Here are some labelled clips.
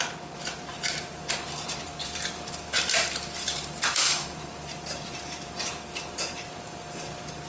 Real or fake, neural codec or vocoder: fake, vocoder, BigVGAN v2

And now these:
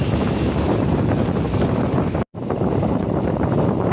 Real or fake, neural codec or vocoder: fake, vocoder, BigVGAN v2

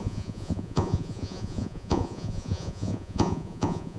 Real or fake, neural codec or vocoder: fake, vocoder, Vocos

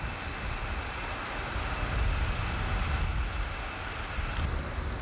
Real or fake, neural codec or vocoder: real